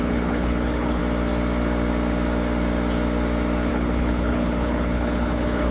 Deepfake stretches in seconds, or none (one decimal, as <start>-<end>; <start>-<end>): 0.0-1.0; 3.7-5.7